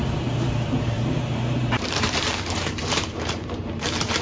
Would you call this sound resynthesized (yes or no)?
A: yes